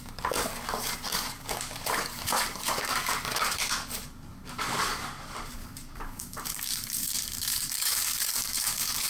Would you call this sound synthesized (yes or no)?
yes